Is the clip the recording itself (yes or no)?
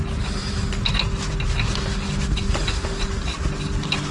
yes